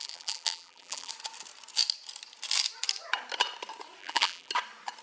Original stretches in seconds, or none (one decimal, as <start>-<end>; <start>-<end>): 1.1-4.0; 4.5-5.0